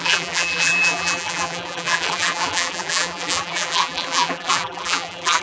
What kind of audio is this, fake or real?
fake